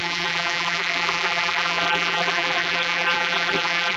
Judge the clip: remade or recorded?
remade